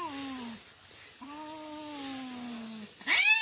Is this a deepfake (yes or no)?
no